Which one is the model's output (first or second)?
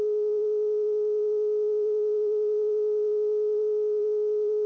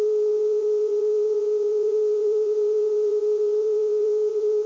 second